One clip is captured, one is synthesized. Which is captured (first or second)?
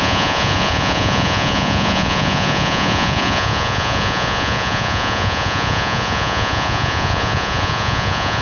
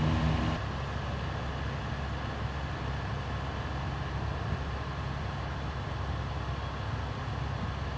second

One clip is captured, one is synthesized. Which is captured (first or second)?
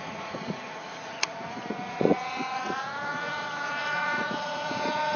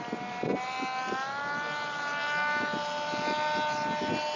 second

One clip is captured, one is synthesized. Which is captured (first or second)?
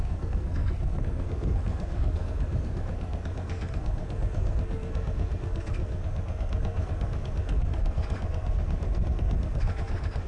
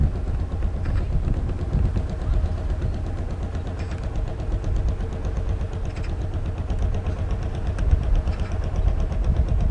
second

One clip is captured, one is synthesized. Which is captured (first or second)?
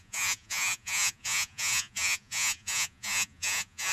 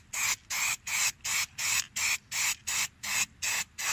second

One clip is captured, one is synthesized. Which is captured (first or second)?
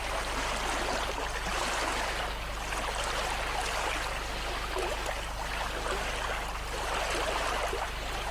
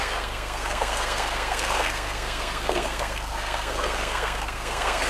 first